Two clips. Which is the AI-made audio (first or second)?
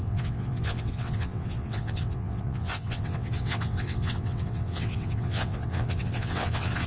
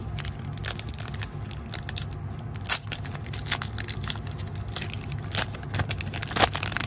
first